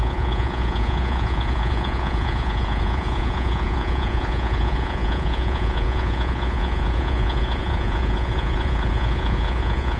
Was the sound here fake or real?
fake